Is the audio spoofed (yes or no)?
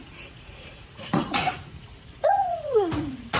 yes